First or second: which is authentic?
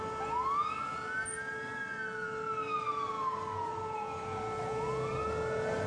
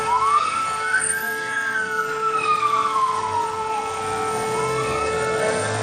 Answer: first